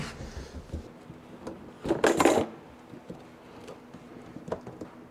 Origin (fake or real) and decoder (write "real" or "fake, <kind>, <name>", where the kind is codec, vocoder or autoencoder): real